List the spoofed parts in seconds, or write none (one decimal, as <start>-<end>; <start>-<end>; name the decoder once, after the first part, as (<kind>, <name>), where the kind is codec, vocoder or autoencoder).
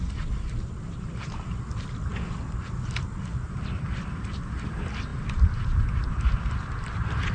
none